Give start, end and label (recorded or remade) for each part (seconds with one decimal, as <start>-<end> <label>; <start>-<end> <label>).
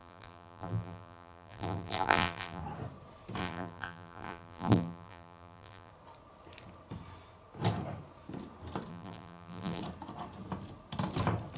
0.0-2.6 remade; 2.6-3.4 recorded; 3.4-5.9 remade; 5.9-8.9 recorded; 8.9-9.8 remade; 9.8-11.6 recorded